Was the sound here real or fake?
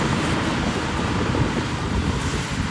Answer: real